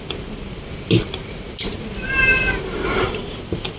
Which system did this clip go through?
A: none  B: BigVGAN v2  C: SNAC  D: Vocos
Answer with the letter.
A